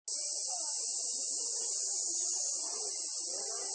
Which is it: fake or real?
real